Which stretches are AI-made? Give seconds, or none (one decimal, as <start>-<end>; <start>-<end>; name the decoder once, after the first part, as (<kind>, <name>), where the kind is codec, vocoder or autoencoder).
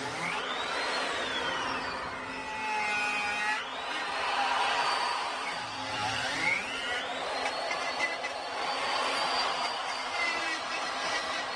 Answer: 0.0-2.4 (vocoder, BigVGAN v2); 4.3-7.1; 7.8-11.6